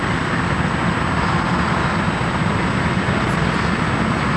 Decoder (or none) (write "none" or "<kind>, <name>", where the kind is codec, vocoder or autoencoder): none